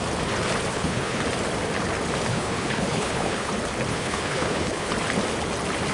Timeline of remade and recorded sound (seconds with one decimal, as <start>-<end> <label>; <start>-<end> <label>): 0.0-0.7 recorded; 0.7-1.2 remade; 1.2-2.3 recorded; 2.3-3.5 remade; 3.5-3.9 recorded; 3.9-4.9 remade; 4.9-5.9 recorded